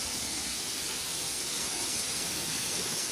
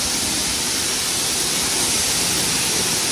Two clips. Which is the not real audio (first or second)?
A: first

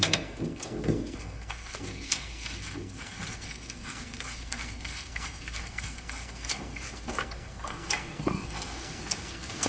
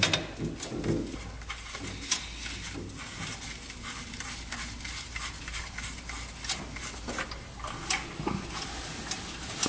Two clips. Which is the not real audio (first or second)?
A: first